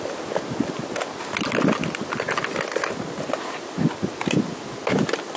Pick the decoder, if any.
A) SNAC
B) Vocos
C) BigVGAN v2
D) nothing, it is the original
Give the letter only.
D